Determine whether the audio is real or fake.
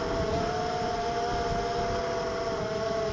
real